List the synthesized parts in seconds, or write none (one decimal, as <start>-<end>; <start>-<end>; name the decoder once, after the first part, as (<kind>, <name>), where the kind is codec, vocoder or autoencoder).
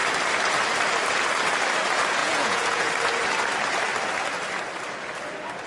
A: 2.2-2.9 (vocoder, Vocos)